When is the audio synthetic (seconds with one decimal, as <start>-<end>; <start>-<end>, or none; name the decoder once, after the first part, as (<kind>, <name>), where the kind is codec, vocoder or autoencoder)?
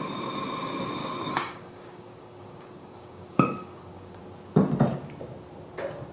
1.0-4.2 (codec, DAC)